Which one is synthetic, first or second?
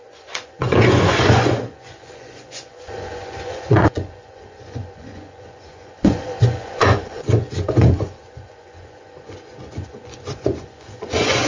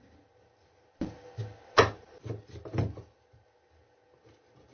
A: first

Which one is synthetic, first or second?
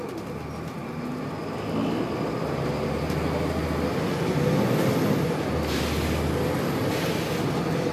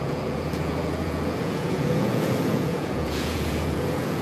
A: second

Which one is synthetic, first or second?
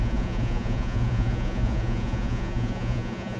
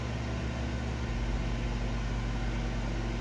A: first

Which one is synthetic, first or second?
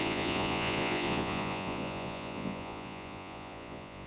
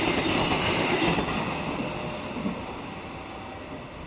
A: first